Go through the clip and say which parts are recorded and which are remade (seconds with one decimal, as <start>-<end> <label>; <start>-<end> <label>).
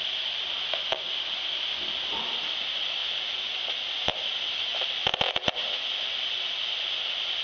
0.0-7.4 recorded